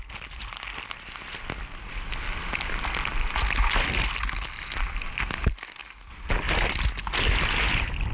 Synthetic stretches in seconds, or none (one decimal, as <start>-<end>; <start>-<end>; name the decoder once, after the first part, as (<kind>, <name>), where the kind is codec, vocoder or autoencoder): none